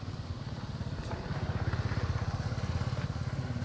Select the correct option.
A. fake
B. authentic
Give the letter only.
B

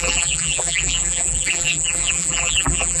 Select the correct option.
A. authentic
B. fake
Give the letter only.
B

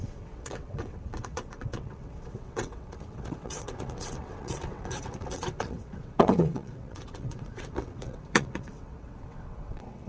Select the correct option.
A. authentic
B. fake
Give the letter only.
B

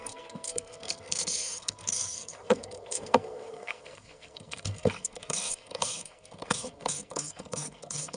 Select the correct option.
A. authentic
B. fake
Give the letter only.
B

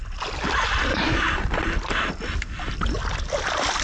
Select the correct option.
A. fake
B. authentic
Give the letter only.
B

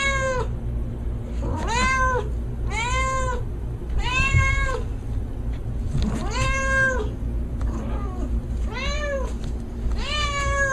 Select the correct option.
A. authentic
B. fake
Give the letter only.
A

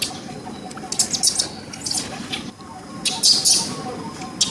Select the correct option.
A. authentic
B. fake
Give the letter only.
A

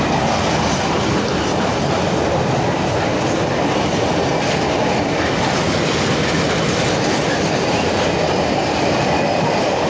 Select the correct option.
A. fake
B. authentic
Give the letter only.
B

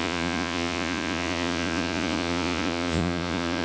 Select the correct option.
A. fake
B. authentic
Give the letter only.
A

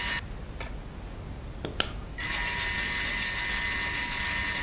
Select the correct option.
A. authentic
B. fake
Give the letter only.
A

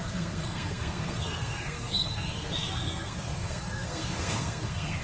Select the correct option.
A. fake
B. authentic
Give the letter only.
A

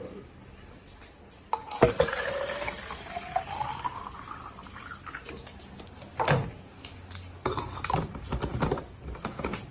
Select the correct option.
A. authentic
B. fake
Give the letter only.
A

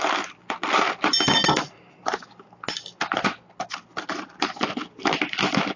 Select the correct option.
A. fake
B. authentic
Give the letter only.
B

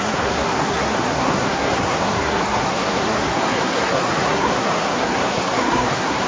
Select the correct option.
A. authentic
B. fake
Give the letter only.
B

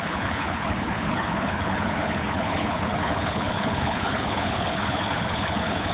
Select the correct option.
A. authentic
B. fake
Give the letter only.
B